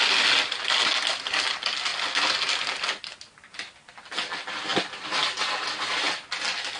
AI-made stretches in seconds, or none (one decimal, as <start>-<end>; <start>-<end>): none